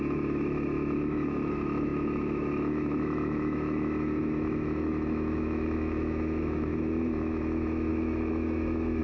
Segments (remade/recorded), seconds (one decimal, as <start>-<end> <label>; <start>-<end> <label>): 0.0-9.0 remade